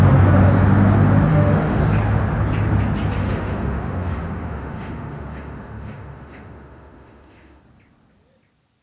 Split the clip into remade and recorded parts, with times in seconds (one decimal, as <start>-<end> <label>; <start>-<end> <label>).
0.0-1.3 recorded; 1.3-1.8 remade; 1.8-3.2 recorded; 3.2-7.6 remade; 7.6-8.8 recorded